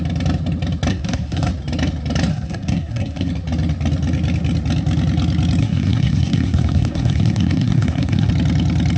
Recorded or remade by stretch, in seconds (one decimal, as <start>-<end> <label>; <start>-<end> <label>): 0.0-0.9 recorded; 0.9-1.5 remade; 1.5-2.3 recorded; 2.3-3.3 remade; 3.3-5.6 recorded; 5.6-8.3 remade; 8.3-9.0 recorded